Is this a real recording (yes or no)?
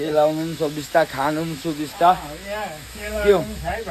no